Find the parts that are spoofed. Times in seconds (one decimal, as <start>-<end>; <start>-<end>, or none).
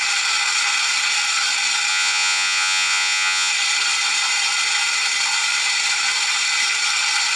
1.9-3.5